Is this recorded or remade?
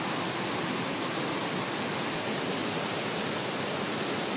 recorded